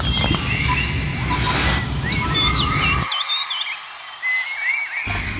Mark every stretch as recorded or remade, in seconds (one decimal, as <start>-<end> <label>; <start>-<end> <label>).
0.0-5.4 recorded